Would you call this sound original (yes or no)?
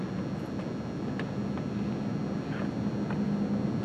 yes